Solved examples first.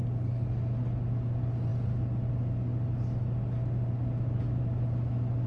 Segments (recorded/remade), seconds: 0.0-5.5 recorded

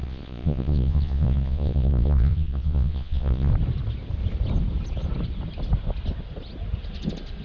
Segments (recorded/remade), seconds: 0.0-3.5 remade; 3.5-7.4 recorded

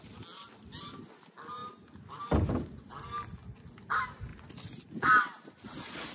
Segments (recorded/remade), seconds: 0.0-6.1 recorded

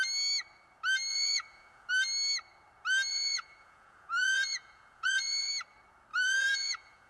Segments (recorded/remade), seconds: 0.0-1.1 recorded; 1.1-1.9 remade; 1.9-3.1 recorded; 3.1-5.5 remade; 5.5-6.1 recorded; 6.1-7.1 remade

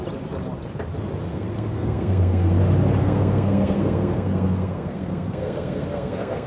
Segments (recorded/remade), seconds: 0.0-1.3 recorded; 1.3-2.6 remade; 2.6-3.0 recorded; 3.0-6.5 remade